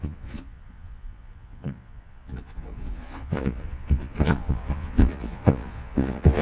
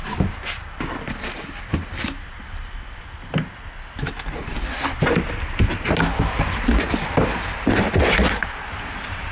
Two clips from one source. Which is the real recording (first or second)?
second